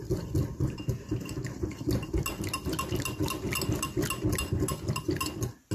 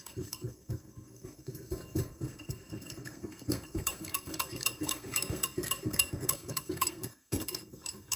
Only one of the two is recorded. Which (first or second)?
first